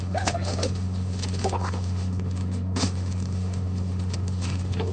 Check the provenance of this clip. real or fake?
fake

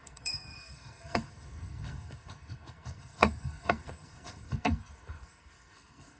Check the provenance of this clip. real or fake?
fake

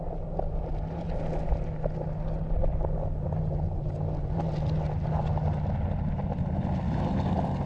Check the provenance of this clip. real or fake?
real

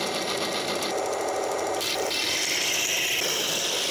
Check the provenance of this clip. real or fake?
real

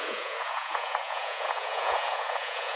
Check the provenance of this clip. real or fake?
fake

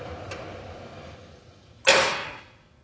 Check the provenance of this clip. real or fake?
real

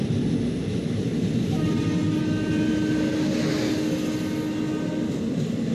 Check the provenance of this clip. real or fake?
real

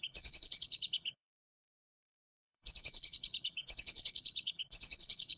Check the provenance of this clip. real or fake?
fake